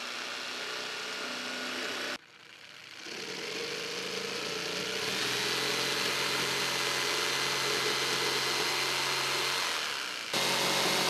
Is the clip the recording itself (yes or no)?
yes